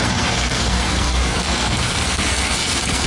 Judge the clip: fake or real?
fake